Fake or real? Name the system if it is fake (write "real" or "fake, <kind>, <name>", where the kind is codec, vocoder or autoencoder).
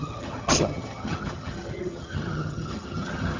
fake, vocoder, HiFi-GAN